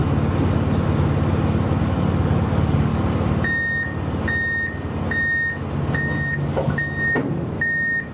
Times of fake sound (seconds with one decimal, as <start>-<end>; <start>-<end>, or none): 1.8-2.9